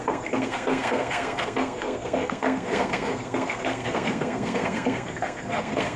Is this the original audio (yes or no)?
no